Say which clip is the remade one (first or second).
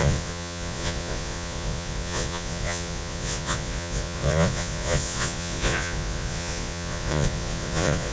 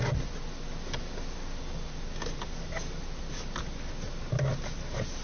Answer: first